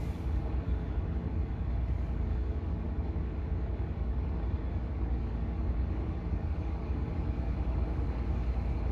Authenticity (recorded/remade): remade